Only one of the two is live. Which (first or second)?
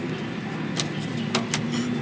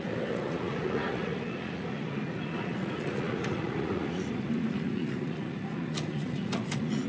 first